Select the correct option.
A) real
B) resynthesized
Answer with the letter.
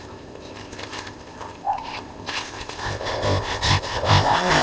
B